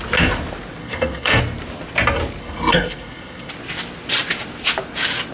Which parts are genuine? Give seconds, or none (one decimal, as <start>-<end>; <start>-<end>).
0.0-0.8; 1.4-2.4; 3.5-5.3